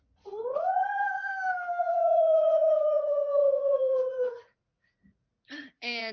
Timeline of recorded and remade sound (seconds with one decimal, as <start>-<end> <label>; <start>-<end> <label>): 0.0-1.3 remade; 1.3-1.8 recorded; 1.8-6.1 remade